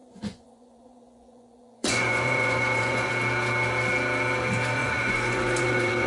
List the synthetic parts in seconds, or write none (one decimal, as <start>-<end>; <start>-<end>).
0.0-3.1; 4.8-6.1